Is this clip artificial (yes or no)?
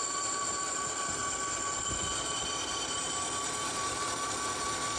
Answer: yes